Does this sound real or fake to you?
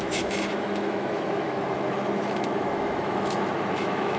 fake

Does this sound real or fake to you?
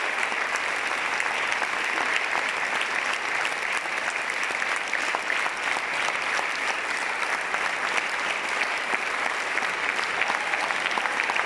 real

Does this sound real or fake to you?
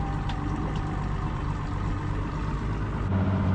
real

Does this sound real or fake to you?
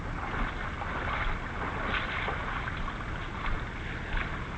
real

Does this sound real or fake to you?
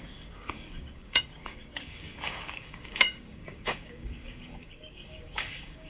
fake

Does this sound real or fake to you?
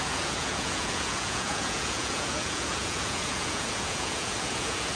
fake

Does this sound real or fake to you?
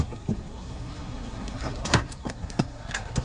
fake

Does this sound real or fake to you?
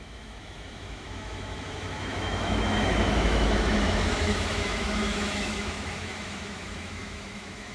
fake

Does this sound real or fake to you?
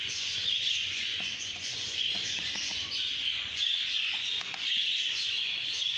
fake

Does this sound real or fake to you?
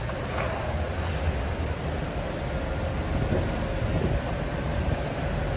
real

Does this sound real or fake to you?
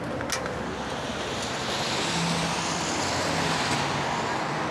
real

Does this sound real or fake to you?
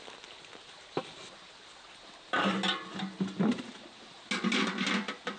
real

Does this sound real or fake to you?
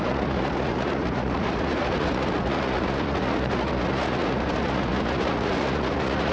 fake